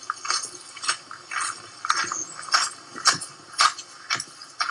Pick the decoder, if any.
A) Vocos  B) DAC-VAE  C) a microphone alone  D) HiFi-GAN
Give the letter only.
C